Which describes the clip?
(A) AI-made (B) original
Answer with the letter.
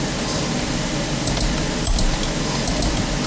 B